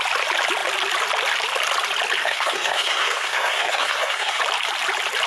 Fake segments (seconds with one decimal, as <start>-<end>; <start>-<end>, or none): 2.2-4.4